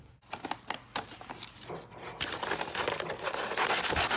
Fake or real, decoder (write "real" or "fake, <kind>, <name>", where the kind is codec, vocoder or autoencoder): real